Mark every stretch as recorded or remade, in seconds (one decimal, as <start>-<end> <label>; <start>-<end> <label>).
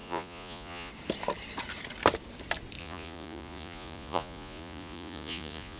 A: 0.0-0.9 remade; 0.9-2.8 recorded; 2.8-5.8 remade